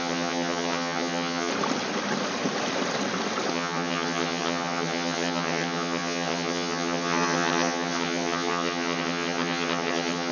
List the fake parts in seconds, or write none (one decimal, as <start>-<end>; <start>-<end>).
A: 0.0-1.5; 3.5-10.3